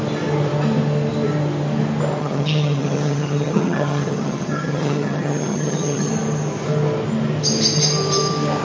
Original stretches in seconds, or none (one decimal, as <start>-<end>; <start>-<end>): 0.0-2.2; 6.1-8.6